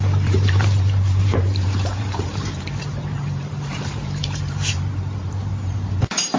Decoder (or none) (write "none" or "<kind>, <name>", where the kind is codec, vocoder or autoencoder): vocoder, BigVGAN v2